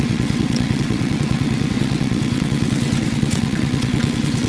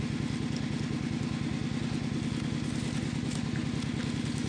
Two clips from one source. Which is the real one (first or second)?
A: second